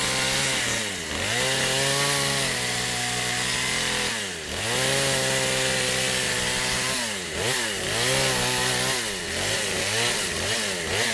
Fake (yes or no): no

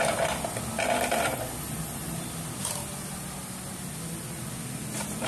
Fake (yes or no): no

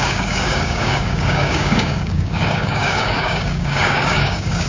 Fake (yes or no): yes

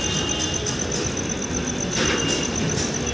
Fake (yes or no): no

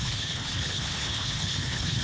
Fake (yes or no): yes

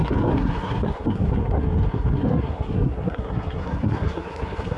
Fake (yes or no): yes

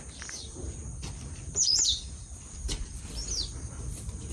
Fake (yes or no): yes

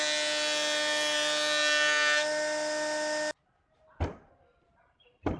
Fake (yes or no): no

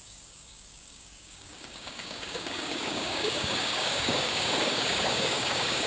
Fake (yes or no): yes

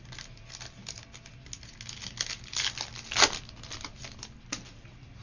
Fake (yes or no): no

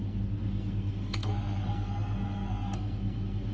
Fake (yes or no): yes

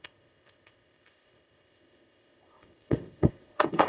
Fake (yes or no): yes